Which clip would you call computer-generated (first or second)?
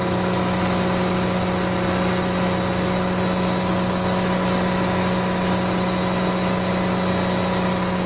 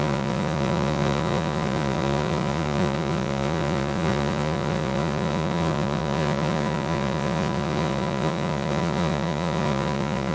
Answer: second